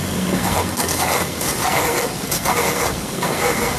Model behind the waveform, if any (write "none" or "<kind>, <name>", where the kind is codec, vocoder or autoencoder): codec, SNAC